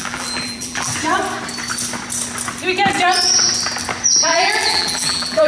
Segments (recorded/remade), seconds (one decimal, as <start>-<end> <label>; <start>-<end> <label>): 0.0-0.9 remade; 0.9-4.2 recorded; 4.2-5.5 remade